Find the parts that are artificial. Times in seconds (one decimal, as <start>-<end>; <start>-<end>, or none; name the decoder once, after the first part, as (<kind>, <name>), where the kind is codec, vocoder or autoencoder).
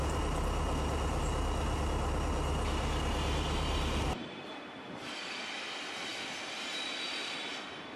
none